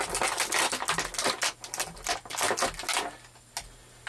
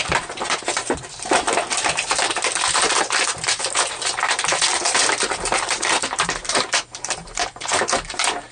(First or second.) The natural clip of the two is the first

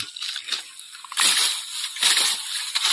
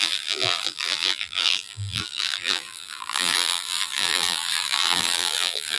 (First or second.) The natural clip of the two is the first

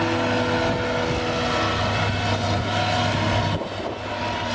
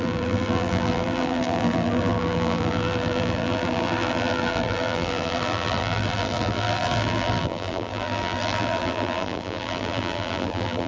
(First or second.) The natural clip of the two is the first